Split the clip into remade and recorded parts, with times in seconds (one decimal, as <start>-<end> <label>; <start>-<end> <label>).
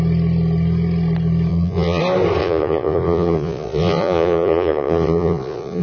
0.0-1.5 recorded; 1.5-2.0 remade; 2.0-2.4 recorded; 2.4-5.8 remade